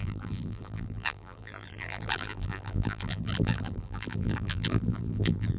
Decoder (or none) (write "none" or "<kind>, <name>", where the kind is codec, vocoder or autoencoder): vocoder, BigVGAN v2